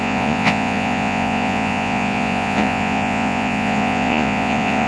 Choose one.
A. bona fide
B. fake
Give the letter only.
B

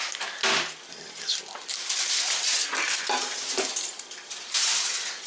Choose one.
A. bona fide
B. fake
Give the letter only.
A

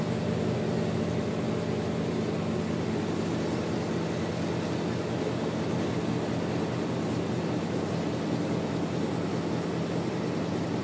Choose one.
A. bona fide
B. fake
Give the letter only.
A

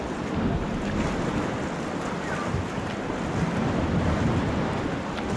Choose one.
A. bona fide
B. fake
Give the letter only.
A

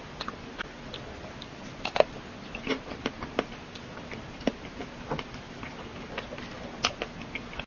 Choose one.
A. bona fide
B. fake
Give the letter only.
A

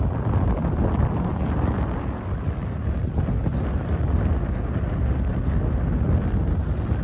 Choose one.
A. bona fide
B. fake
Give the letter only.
A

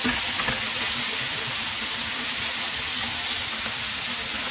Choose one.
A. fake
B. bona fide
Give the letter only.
B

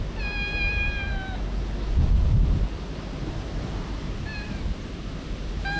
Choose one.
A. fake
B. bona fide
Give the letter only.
B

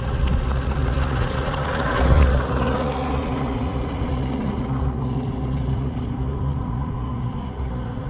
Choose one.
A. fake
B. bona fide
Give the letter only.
A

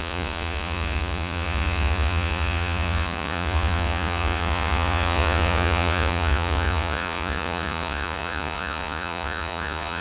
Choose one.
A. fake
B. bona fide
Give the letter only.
A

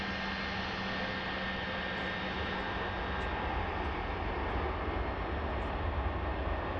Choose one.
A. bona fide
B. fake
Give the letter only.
A